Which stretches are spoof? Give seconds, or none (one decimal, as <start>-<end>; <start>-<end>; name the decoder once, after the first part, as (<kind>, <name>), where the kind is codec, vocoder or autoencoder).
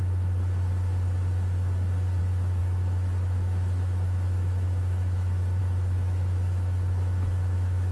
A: 2.2-7.9 (autoencoder, DAC-VAE)